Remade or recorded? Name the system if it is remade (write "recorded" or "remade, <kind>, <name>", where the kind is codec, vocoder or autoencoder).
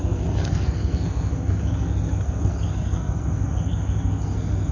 remade, codec, SNAC